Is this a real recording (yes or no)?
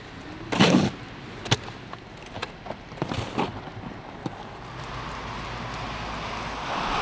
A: yes